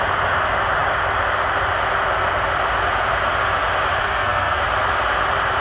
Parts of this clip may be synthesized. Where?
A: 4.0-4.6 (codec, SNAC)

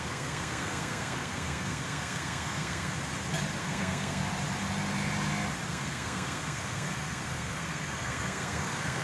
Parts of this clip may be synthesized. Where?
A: 0.0-2.9 (codec, SNAC); 3.6-4.2; 5.7-9.0